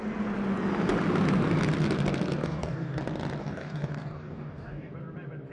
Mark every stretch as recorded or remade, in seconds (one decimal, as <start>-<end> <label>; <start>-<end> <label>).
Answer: 0.0-2.4 recorded; 2.4-3.0 remade; 3.0-3.4 recorded; 3.4-4.9 remade; 4.9-5.5 recorded